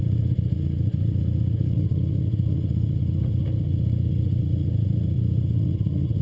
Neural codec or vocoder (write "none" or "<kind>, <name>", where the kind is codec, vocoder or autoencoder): vocoder, Vocos